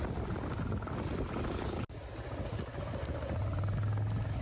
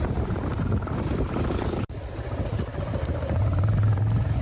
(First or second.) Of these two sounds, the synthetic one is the second